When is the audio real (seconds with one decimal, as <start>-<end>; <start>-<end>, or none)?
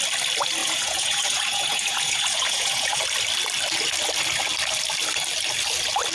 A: 0.0-0.6; 3.0-6.1